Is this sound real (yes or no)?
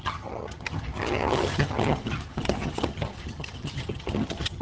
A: no